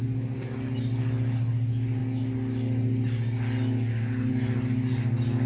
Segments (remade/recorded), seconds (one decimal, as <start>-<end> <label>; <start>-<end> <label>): 0.0-5.5 recorded